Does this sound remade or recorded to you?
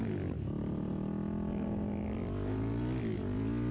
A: recorded